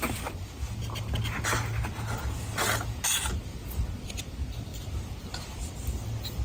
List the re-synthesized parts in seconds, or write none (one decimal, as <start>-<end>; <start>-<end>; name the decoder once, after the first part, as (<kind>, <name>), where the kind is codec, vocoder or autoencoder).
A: none